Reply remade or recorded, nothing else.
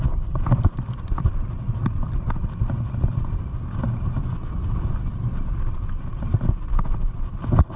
recorded